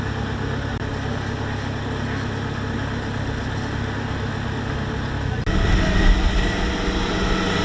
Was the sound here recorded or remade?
recorded